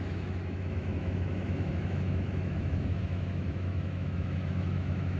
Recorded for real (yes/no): no